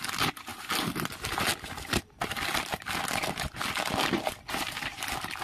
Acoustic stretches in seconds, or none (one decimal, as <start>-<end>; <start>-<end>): 0.0-5.4